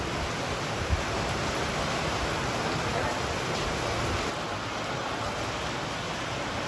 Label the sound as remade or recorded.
recorded